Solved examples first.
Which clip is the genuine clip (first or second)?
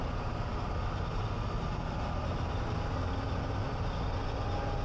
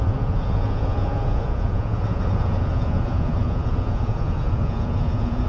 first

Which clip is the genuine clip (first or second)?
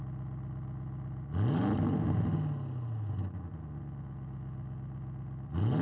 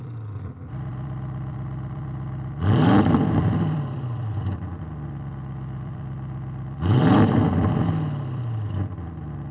first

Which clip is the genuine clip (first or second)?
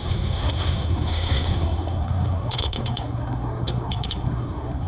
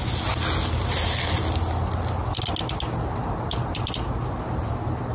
second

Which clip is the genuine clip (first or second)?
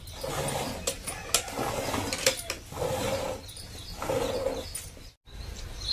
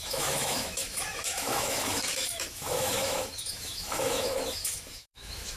first